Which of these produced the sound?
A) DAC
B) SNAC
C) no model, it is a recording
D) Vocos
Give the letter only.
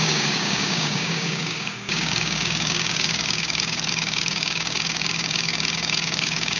A